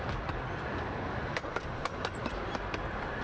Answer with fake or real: real